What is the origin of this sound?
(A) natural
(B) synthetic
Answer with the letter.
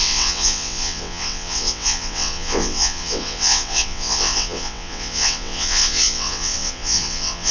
B